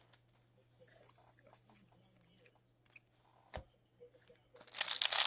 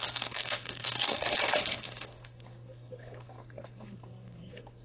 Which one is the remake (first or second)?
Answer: second